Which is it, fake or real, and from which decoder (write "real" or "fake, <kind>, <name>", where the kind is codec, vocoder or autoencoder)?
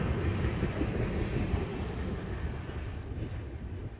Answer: real